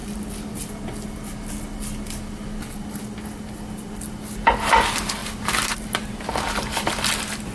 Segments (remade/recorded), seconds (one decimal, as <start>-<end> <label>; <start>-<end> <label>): 0.0-5.2 recorded; 5.2-6.5 remade; 6.5-7.5 recorded